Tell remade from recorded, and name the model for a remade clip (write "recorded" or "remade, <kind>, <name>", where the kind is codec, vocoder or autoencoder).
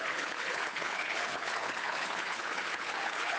remade, codec, HILCodec